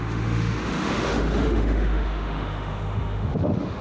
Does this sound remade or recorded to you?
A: remade